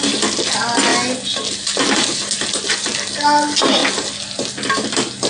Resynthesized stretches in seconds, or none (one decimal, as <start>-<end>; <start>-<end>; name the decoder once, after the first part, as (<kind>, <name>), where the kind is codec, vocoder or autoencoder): none